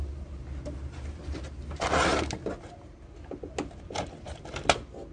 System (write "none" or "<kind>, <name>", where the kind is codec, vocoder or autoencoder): none